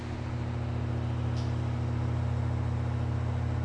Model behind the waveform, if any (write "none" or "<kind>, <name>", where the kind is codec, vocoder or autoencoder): none